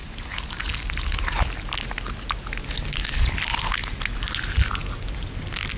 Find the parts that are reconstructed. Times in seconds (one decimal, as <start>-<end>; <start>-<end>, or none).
none